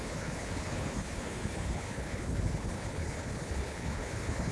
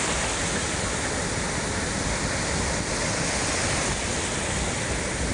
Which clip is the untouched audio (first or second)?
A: second